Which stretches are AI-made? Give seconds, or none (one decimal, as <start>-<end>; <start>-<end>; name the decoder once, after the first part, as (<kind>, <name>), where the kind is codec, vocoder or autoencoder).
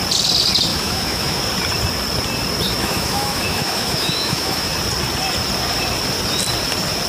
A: 0.7-1.4 (autoencoder, DAC-VAE); 2.8-4.7